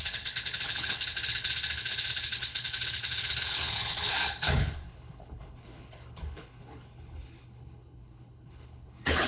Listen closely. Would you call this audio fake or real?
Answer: fake